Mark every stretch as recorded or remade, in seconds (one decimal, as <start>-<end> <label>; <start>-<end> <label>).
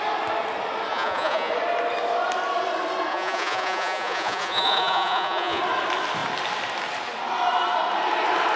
0.0-0.9 recorded; 0.9-1.5 remade; 1.5-3.1 recorded; 3.1-5.6 remade; 5.6-8.6 recorded